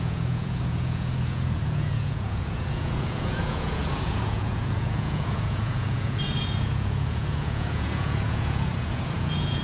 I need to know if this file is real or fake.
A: fake